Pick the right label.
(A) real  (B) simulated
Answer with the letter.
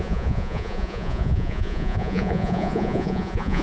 B